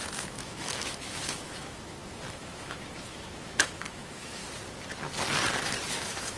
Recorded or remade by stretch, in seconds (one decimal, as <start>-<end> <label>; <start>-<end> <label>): 0.0-4.4 remade; 4.4-5.9 recorded; 5.9-6.4 remade